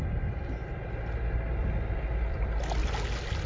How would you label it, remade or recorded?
recorded